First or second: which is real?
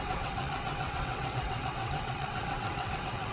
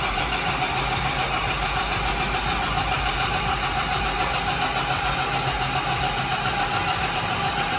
second